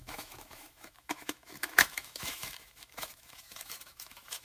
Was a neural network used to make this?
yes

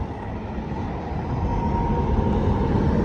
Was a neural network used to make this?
no